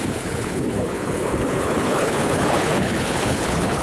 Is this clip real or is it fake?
fake